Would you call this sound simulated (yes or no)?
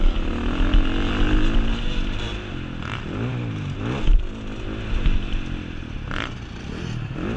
no